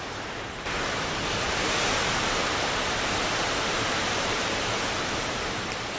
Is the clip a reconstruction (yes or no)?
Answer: yes